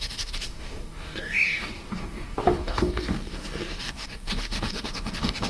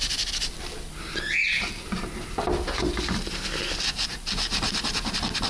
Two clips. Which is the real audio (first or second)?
second